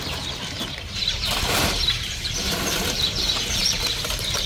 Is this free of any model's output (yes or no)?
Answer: no